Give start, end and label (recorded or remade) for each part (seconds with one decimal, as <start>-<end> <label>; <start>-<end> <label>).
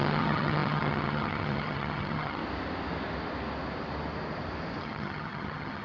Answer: 0.0-2.4 remade; 2.4-4.8 recorded; 4.8-5.8 remade